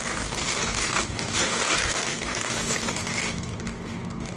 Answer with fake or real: fake